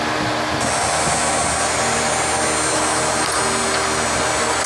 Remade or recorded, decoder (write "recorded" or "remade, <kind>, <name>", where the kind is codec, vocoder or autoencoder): recorded